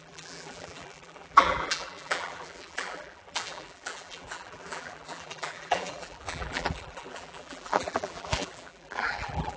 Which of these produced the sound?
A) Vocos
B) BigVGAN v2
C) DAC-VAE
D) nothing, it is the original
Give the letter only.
B